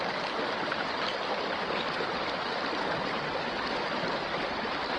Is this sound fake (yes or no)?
no